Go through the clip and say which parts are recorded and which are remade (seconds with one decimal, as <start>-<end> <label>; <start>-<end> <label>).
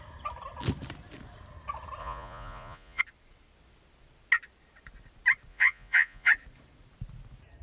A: 0.0-2.0 recorded; 2.0-3.0 remade; 3.0-5.5 recorded; 5.5-6.3 remade; 6.3-7.6 recorded